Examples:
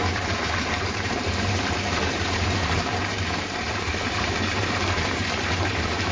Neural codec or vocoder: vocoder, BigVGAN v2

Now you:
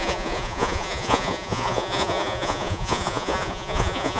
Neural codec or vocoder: vocoder, Vocos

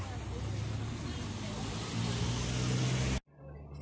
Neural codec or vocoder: none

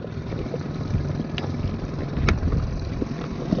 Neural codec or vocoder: none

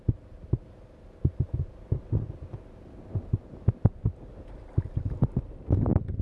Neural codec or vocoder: none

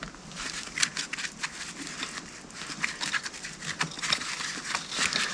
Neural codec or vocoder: none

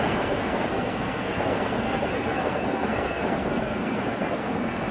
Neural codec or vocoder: codec, SNAC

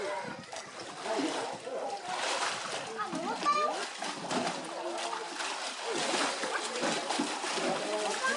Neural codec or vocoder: none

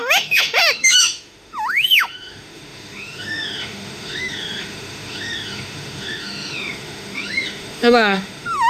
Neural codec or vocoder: autoencoder, DAC-VAE